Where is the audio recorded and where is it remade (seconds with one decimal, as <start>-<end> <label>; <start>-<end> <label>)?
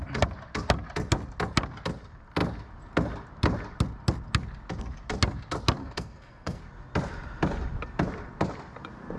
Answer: 0.0-5.8 recorded; 5.8-6.6 remade; 6.6-9.2 recorded